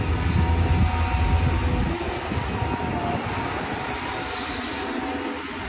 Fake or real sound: real